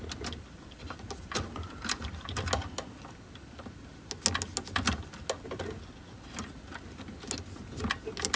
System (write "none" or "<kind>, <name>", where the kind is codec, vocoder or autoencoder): none